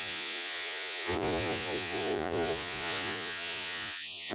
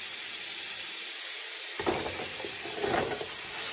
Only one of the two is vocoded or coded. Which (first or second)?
first